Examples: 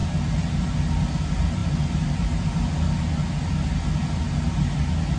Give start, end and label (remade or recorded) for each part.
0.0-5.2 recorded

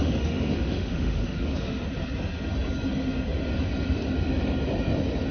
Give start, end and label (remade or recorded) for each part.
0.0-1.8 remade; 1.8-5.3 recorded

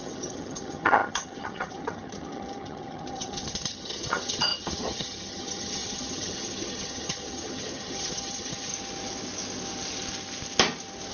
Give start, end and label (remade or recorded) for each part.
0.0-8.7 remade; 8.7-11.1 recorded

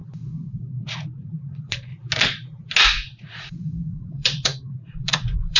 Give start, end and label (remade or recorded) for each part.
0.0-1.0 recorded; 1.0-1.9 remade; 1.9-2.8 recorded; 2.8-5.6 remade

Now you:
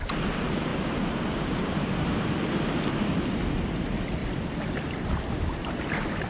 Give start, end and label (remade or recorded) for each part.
0.0-0.7 recorded; 0.7-3.2 remade; 3.2-4.2 recorded; 4.2-6.3 remade